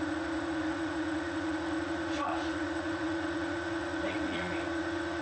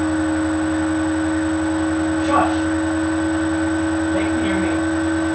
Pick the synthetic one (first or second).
first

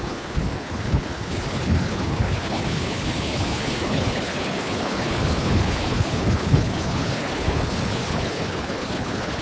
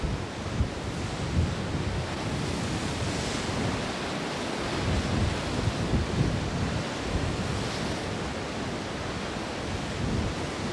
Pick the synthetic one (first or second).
first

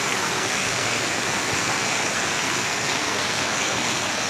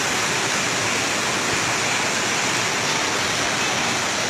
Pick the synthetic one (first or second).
first